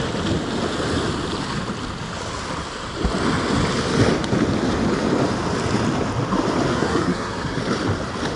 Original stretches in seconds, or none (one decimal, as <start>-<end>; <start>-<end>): 0.0-6.7; 7.6-8.4